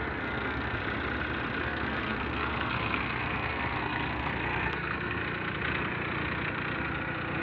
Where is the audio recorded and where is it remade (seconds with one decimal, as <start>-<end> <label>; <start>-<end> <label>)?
0.0-0.8 remade; 0.8-1.6 recorded; 1.6-5.2 remade; 5.2-7.4 recorded